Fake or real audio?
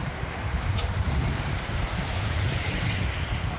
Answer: fake